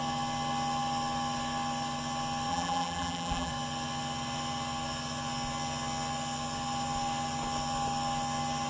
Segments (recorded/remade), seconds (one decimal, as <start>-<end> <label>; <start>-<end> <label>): 0.0-2.5 recorded; 2.5-3.5 remade; 3.5-8.7 recorded